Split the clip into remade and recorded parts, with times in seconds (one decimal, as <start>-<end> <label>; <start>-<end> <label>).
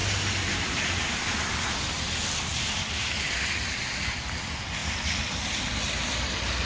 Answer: 0.0-1.4 remade; 1.4-2.5 recorded; 2.5-3.9 remade; 3.9-6.7 recorded